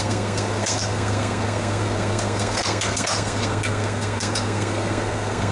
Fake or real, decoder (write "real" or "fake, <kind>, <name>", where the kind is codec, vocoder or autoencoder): fake, codec, SNAC